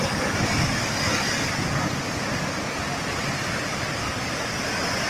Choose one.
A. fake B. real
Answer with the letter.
B